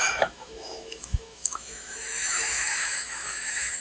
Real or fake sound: fake